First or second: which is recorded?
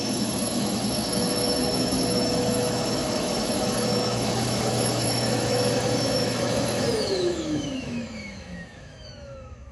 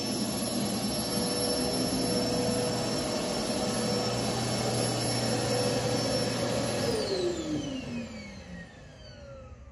second